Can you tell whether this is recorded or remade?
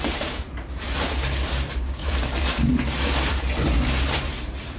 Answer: remade